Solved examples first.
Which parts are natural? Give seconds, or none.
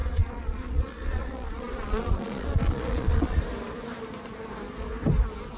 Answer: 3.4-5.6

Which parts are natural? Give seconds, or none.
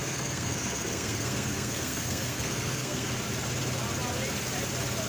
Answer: 3.1-5.1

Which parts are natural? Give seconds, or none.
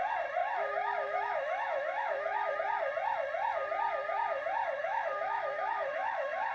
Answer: 0.0-0.4; 2.5-4.8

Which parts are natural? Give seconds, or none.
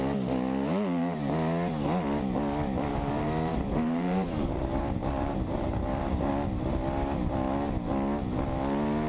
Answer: 0.0-2.9; 6.3-9.1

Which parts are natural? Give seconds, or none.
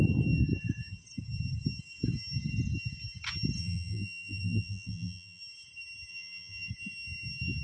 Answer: 0.0-3.6; 5.4-6.1; 6.7-7.6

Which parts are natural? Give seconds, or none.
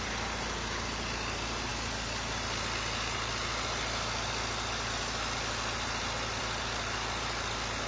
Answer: 0.0-7.9